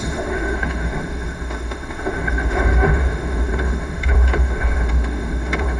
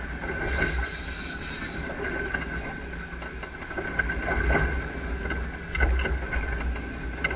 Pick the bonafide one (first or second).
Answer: second